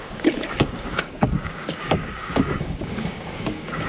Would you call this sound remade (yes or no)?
yes